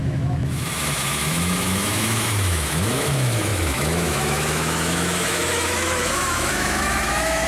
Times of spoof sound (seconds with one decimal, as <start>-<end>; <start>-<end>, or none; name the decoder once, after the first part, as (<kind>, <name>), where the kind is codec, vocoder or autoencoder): 0.0-7.5 (autoencoder, DAC-VAE)